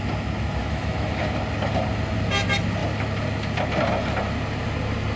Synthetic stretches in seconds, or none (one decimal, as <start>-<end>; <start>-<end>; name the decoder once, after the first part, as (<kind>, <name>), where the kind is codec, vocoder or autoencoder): 0.6-1.2 (autoencoder, DAC-VAE)